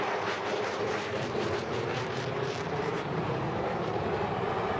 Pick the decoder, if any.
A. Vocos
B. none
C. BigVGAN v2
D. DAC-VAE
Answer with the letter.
C